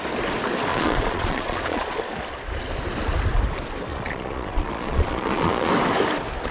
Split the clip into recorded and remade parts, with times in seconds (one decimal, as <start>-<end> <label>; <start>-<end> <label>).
0.0-0.7 recorded; 0.7-2.0 remade; 2.0-3.9 recorded; 3.9-5.7 remade; 5.7-6.5 recorded